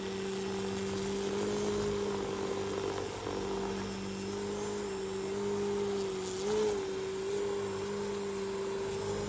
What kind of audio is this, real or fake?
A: real